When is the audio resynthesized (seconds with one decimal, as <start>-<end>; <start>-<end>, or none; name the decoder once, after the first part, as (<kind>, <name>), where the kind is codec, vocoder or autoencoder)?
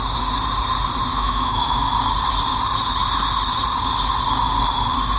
1.1-1.9 (autoencoder, DAC-VAE)